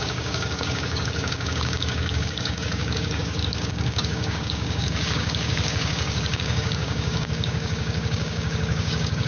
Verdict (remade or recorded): remade